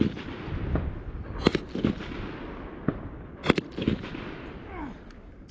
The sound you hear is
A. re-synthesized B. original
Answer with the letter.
B